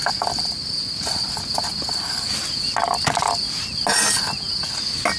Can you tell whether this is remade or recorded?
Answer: recorded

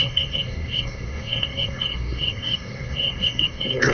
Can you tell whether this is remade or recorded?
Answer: remade